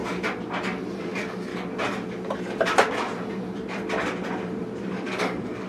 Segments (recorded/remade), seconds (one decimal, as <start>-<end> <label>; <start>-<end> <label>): 0.0-1.0 recorded; 1.0-1.5 remade; 1.5-4.9 recorded; 4.9-5.7 remade